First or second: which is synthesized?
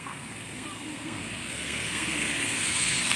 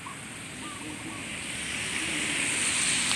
first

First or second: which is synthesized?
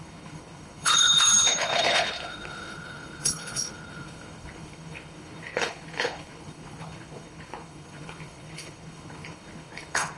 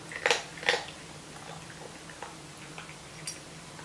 first